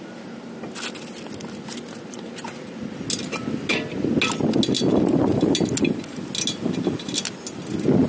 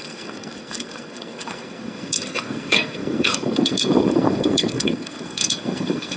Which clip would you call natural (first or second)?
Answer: first